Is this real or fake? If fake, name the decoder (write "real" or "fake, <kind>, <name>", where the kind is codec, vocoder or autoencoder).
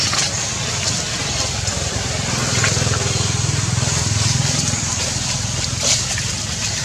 real